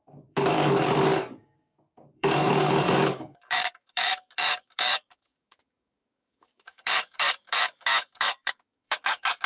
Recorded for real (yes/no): no